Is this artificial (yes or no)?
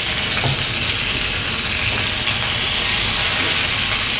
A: no